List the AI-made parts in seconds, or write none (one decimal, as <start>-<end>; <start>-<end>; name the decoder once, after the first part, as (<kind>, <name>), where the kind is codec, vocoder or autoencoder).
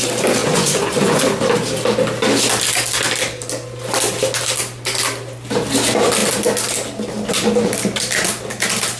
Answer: 0.4-1.2 (vocoder, Vocos)